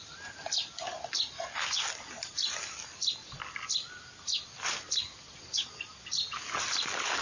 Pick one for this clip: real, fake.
real